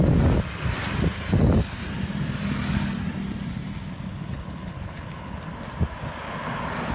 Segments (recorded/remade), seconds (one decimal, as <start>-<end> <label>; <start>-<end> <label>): 0.0-4.1 recorded; 4.1-5.4 remade; 5.4-6.9 recorded